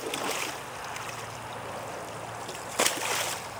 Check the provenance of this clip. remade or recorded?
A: recorded